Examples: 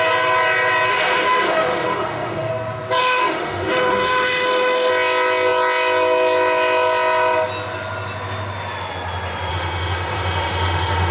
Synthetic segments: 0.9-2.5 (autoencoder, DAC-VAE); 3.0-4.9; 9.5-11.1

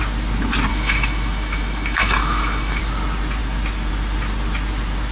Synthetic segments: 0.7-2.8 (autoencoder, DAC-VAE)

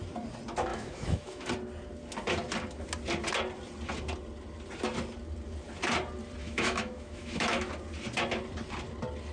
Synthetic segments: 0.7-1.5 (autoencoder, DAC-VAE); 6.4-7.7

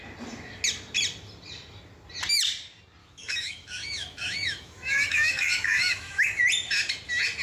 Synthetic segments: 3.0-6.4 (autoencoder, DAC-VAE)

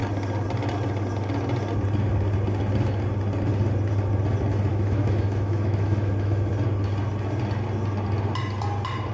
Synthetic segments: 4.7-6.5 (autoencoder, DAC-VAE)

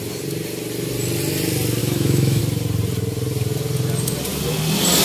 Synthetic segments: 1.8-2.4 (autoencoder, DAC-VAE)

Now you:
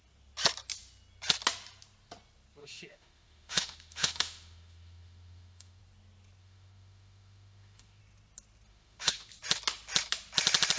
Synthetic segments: 2.6-5.8 (autoencoder, DAC-VAE); 6.4-8.0; 8.7-9.3

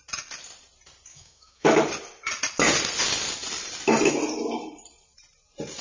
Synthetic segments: 1.1-1.8 (autoencoder, DAC-VAE)